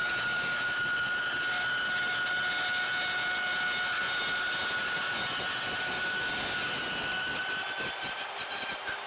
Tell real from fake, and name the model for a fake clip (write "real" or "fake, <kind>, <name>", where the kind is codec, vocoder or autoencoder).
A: real